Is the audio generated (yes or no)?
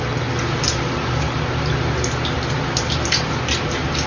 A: no